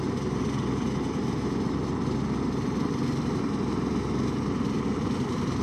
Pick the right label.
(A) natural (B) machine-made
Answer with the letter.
A